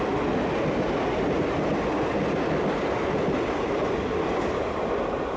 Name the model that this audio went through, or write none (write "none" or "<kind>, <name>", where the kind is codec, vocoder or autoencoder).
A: none